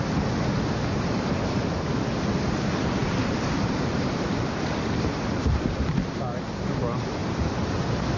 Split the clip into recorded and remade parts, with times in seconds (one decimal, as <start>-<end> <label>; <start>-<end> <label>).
0.0-3.0 recorded; 3.0-6.2 remade; 6.2-7.2 recorded; 7.2-8.2 remade